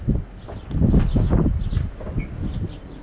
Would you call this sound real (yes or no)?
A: yes